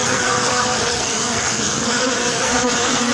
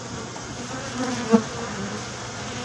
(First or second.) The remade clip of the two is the first